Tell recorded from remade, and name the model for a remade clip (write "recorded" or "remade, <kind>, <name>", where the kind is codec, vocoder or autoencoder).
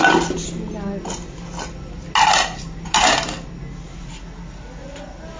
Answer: recorded